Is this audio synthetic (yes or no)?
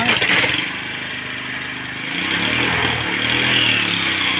no